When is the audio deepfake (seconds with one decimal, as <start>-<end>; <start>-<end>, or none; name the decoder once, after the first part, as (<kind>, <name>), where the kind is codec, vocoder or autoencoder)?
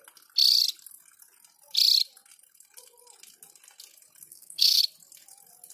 4.3-4.8 (codec, SNAC)